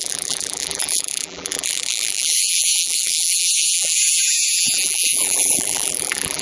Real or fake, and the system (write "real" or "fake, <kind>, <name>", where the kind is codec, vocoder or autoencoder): fake, vocoder, BigVGAN v2